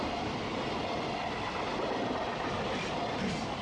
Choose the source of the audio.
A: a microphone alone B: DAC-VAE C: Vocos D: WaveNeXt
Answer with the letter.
A